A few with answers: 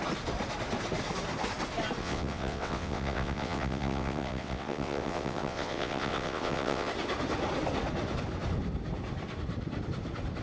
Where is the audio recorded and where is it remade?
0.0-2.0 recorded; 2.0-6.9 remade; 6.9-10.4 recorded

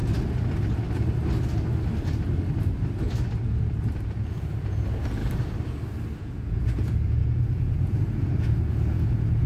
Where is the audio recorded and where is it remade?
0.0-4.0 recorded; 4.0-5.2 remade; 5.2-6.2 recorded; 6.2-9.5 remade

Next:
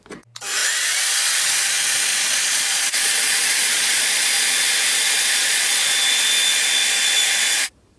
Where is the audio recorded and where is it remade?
0.0-2.1 recorded; 2.1-4.2 remade; 4.2-5.4 recorded; 5.4-5.9 remade; 5.9-8.0 recorded

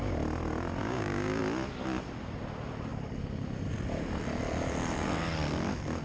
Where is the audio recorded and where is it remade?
0.0-0.8 recorded; 0.8-1.4 remade; 1.4-6.0 recorded

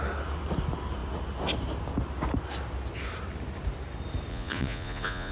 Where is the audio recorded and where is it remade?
0.0-4.3 recorded; 4.3-5.3 remade

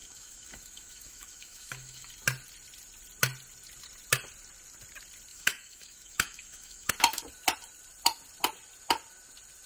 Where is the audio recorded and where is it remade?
0.0-2.1 remade; 2.1-5.3 recorded; 5.3-6.9 remade; 6.9-9.7 recorded

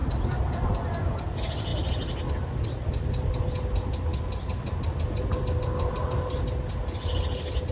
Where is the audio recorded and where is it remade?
0.0-7.7 recorded

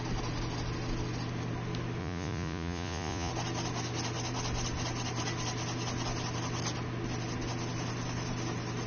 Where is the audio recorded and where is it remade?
0.0-2.0 recorded; 2.0-3.3 remade; 3.3-8.9 recorded